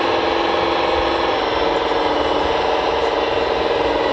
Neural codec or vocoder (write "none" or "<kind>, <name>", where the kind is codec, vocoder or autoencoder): none